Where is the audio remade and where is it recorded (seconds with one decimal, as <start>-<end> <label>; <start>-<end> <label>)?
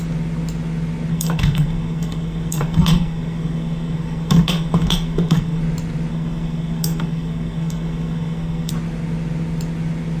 0.0-1.1 recorded; 1.1-5.6 remade; 5.6-6.1 recorded; 6.1-8.7 remade; 8.7-10.2 recorded